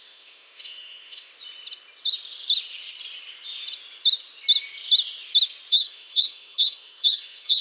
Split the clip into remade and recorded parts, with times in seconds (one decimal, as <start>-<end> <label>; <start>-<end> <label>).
0.0-1.3 remade; 1.3-5.7 recorded; 5.7-7.6 remade

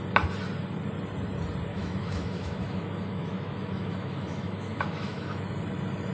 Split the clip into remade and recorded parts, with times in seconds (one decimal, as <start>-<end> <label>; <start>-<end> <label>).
0.0-1.7 recorded; 1.7-5.4 remade; 5.4-6.1 recorded

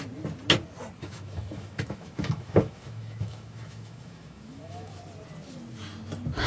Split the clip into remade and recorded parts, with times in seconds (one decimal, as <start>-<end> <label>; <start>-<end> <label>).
0.0-1.0 recorded; 1.0-4.9 remade; 4.9-6.5 recorded